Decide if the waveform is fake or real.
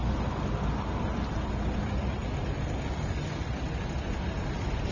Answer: real